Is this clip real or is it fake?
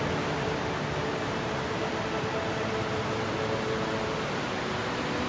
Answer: real